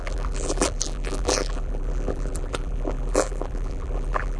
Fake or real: fake